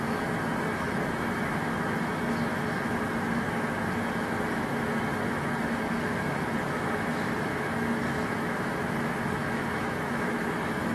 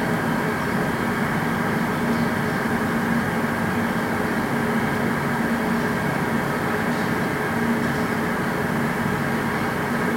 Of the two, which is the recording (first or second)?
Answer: second